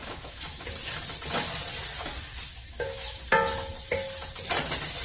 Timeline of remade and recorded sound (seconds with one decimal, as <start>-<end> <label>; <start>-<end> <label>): 0.0-0.7 remade; 0.7-2.3 recorded; 2.3-3.2 remade; 3.2-5.0 recorded